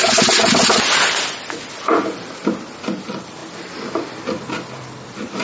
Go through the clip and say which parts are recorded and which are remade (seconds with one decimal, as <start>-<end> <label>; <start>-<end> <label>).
0.0-3.0 recorded; 3.0-5.4 remade